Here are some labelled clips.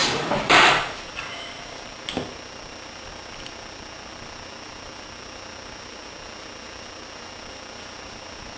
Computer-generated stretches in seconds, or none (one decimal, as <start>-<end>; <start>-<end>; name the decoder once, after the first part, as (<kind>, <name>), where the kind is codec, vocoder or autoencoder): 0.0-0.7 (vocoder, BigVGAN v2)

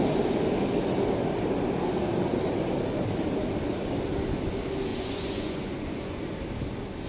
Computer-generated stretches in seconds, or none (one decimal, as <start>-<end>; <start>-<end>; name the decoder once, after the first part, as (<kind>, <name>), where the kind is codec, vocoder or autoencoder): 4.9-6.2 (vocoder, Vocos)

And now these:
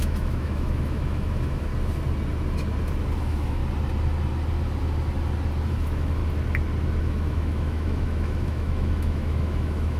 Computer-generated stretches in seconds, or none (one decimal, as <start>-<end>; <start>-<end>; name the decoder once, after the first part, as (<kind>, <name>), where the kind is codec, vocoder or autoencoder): 0.0-1.7 (autoencoder, DAC-VAE); 3.2-3.6; 5.7-6.2; 7.0-10.0

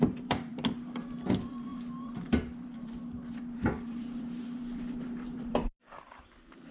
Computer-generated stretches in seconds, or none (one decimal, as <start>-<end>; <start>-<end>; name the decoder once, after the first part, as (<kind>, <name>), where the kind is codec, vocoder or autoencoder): 0.0-6.7 (vocoder, BigVGAN v2)

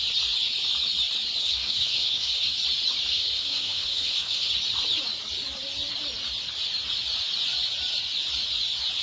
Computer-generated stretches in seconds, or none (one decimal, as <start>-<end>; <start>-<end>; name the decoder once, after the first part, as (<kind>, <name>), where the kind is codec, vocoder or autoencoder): 1.4-2.5 (codec, SNAC); 3.1-4.5

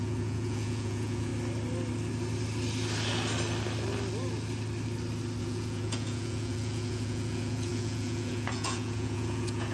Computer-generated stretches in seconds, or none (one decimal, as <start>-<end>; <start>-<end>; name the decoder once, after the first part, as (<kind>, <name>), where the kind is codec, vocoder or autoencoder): 0.0-1.3 (vocoder, Vocos); 5.4-9.7

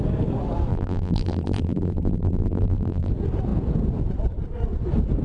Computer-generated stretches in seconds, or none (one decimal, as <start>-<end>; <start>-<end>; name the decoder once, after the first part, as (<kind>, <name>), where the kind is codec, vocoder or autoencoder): 0.7-3.1 (vocoder, BigVGAN v2)

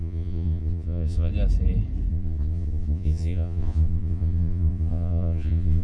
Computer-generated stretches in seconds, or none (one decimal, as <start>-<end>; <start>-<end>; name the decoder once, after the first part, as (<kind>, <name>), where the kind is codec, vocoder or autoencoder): 0.0-1.3 (vocoder, Vocos); 2.1-5.8